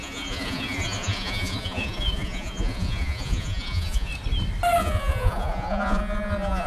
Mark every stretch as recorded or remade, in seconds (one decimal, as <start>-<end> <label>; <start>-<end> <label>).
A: 0.0-4.1 remade; 4.1-4.8 recorded; 4.8-6.7 remade